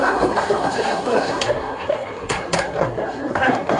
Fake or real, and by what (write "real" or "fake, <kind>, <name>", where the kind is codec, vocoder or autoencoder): fake, codec, SNAC